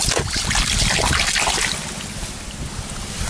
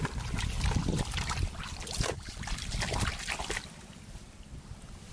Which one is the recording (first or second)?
first